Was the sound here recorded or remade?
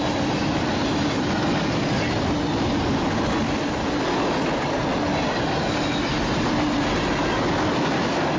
recorded